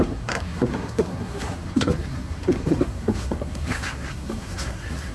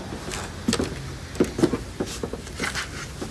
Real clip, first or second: second